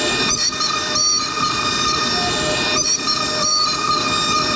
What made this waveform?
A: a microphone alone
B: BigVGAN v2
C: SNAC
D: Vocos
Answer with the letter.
B